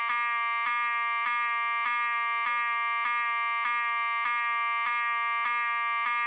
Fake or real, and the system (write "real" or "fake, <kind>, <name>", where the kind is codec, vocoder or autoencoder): real